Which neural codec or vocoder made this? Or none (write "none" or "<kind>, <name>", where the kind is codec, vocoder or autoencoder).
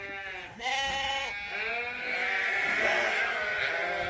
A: none